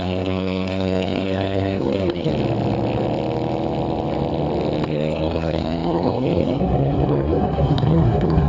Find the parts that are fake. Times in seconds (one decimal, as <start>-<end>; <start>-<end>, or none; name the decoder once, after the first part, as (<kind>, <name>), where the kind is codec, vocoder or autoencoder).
0.0-2.3 (codec, SNAC); 4.9-8.5